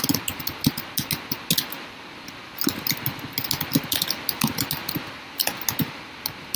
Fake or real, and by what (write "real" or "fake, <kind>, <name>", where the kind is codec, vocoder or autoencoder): real